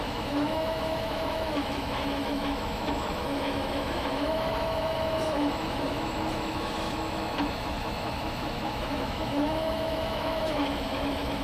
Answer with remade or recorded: remade